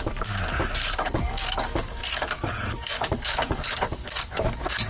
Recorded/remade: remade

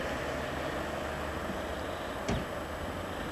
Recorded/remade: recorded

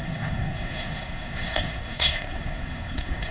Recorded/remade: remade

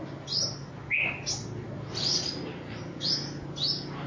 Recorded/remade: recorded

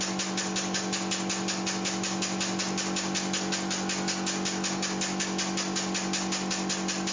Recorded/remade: recorded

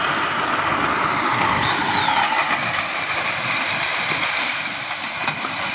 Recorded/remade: recorded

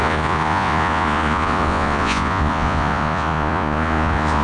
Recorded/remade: remade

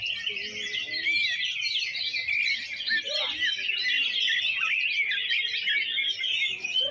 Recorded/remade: recorded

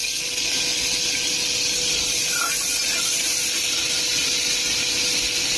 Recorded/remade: recorded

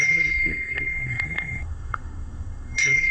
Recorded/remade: remade